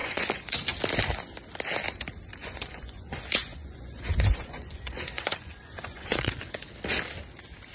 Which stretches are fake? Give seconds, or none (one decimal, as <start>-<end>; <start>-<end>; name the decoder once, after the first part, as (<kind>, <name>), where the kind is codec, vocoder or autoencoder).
0.0-0.6 (vocoder, Vocos); 2.4-6.7